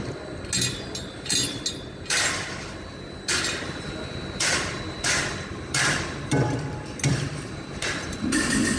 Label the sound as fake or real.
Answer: real